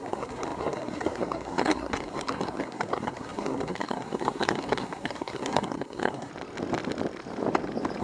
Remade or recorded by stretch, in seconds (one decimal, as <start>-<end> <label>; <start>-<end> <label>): 0.0-6.3 remade; 6.3-8.0 recorded